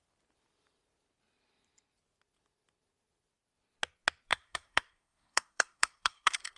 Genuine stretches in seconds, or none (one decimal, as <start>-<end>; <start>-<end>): 0.0-4.3